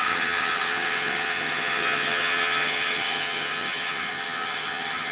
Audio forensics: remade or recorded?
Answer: remade